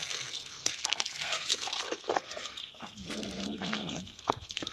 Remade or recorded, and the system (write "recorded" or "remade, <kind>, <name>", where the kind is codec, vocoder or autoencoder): remade, codec, SNAC